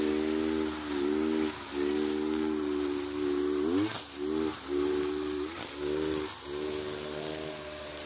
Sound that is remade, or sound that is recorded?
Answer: recorded